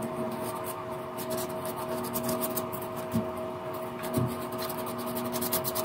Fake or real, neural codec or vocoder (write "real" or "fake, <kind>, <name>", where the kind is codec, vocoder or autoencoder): real